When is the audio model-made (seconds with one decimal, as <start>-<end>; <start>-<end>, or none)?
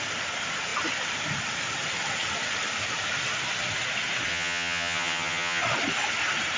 4.3-5.6